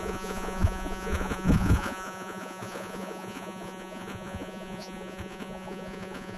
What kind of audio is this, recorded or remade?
remade